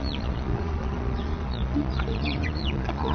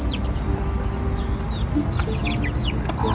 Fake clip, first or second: first